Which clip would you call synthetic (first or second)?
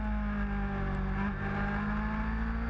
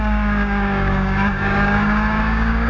second